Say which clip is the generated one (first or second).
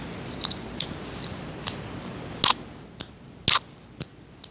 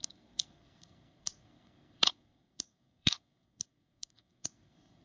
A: second